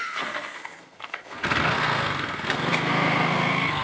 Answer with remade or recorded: remade